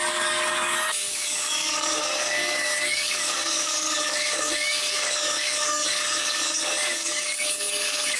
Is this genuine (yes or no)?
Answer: no